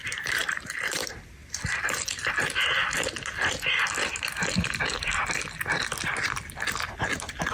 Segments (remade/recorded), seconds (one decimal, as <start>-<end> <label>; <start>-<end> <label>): 0.0-7.5 recorded